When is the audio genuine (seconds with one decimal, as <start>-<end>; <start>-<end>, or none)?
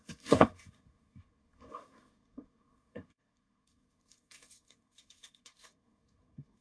none